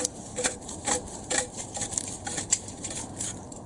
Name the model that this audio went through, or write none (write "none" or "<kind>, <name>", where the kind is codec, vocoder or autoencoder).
vocoder, BigVGAN v2